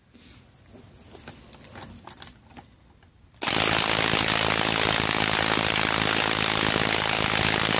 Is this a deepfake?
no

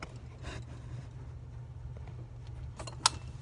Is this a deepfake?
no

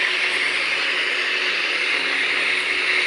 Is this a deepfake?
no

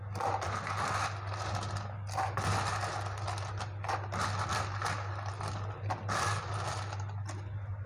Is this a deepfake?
no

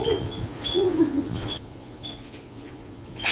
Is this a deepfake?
yes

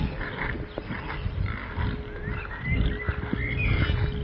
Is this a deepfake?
no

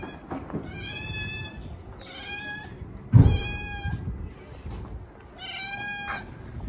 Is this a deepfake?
no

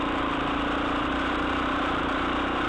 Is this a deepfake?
yes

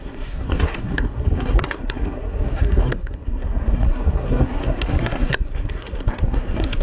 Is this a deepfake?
yes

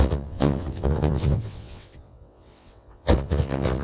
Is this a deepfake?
yes